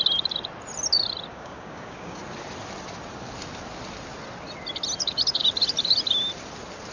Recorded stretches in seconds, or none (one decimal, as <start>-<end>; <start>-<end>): 0.0-1.3; 2.2-6.9